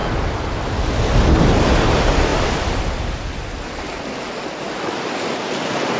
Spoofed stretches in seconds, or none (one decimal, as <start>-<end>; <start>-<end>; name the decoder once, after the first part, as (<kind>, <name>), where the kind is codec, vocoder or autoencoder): none